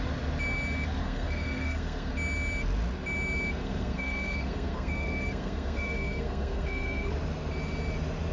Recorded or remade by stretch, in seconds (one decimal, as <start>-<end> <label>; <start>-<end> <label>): 0.0-1.0 recorded; 1.0-2.1 remade; 2.1-3.6 recorded; 3.6-7.1 remade; 7.1-8.3 recorded